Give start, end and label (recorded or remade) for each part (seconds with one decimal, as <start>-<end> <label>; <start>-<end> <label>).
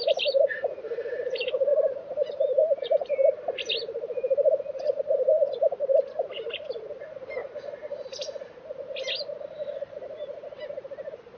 0.0-11.4 recorded